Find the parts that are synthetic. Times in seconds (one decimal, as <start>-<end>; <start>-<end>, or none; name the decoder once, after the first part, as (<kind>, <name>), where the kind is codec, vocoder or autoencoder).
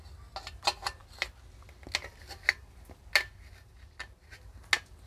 none